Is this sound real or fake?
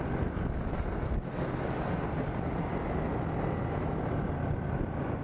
real